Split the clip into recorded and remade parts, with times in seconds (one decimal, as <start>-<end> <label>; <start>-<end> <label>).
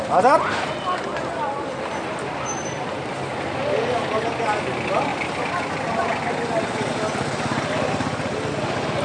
0.0-9.0 recorded